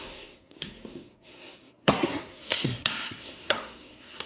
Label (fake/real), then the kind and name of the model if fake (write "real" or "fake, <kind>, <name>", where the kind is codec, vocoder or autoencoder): fake, codec, SNAC